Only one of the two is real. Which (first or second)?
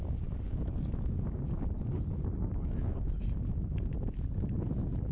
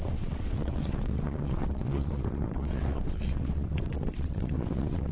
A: first